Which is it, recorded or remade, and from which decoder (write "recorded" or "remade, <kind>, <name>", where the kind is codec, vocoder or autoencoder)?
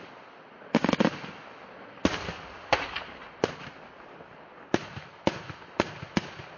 recorded